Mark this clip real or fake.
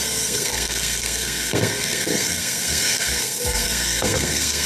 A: fake